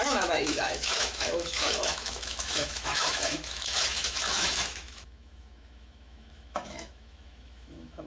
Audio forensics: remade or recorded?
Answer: remade